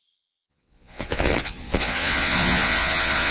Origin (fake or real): fake